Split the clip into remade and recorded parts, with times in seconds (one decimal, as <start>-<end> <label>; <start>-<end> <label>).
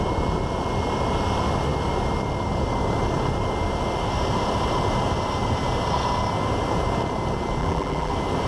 0.0-7.6 recorded; 7.6-8.1 remade; 8.1-8.5 recorded